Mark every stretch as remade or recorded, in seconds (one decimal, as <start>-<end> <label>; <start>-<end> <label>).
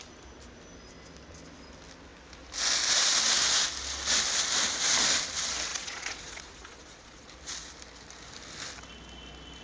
0.0-5.7 recorded; 5.7-7.3 remade; 7.3-9.6 recorded